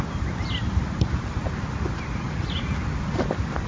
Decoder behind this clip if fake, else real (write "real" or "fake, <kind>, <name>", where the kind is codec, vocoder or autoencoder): real